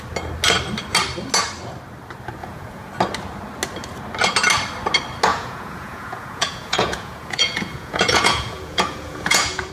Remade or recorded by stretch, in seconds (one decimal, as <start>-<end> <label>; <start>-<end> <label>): 0.0-2.4 recorded; 2.4-2.9 remade; 2.9-5.3 recorded; 5.3-9.7 remade

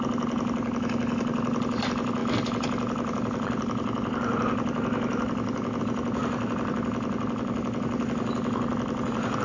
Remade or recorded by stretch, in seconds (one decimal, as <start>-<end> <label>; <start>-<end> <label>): 0.0-9.4 recorded

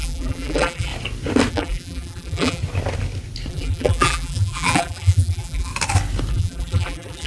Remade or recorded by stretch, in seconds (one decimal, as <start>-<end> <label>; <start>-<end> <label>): 0.0-0.9 remade; 0.9-1.5 recorded; 1.5-2.6 remade; 2.6-3.5 recorded; 3.5-5.7 remade; 5.7-6.3 recorded; 6.3-7.3 remade